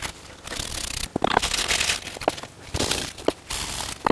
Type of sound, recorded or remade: recorded